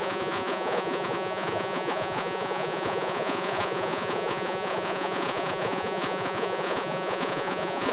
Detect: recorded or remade remade